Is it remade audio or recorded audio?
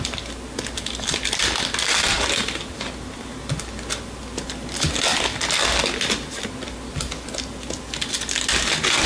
recorded